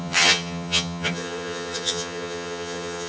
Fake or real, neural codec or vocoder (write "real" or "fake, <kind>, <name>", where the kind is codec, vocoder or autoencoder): fake, vocoder, HiFi-GAN